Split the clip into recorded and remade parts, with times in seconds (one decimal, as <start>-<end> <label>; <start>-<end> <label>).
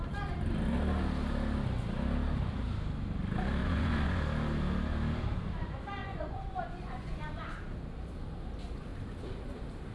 0.0-3.6 recorded; 3.6-4.2 remade; 4.2-6.0 recorded; 6.0-7.2 remade; 7.2-9.9 recorded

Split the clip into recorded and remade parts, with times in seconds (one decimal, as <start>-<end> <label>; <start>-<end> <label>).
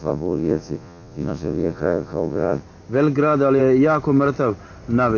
0.0-2.6 remade; 2.6-5.2 recorded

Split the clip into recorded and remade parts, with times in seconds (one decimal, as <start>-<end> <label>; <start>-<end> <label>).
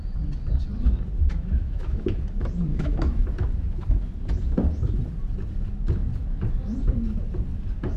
0.0-1.2 recorded; 1.2-2.2 remade; 2.2-2.7 recorded; 2.7-3.2 remade; 3.2-8.0 recorded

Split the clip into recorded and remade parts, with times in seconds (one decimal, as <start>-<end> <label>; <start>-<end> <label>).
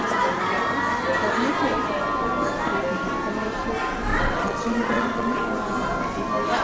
0.0-4.1 recorded; 4.1-5.4 remade; 5.4-6.6 recorded